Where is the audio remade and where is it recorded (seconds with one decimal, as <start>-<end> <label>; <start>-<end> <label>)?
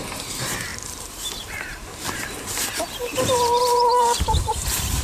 0.0-5.0 remade